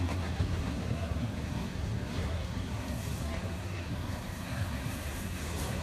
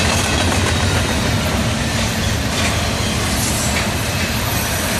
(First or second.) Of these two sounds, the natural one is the second